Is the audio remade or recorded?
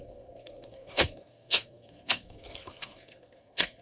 remade